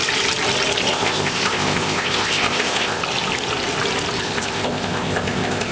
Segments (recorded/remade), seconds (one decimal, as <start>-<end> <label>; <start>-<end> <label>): 0.0-0.9 recorded; 0.9-3.0 remade; 3.0-4.2 recorded; 4.2-5.7 remade